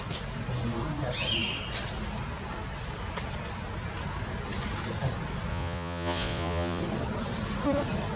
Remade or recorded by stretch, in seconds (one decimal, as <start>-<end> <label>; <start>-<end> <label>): 0.0-5.5 recorded; 5.5-6.8 remade; 6.8-8.2 recorded